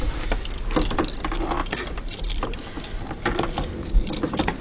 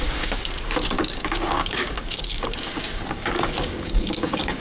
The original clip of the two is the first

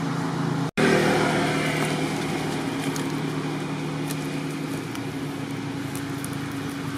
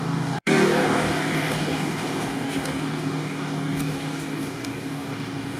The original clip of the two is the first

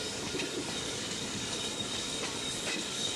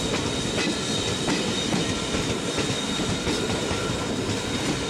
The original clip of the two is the second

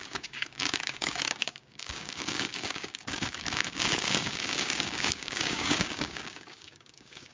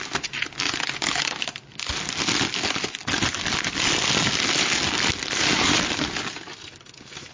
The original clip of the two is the second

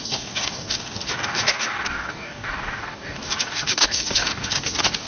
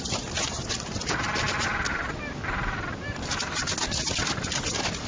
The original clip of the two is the second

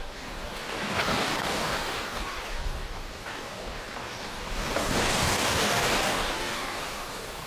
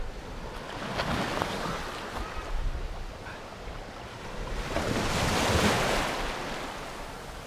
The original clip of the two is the second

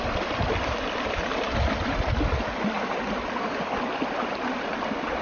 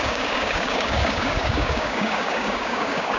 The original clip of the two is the first